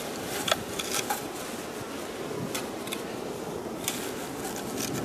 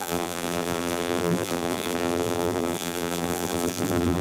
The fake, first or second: second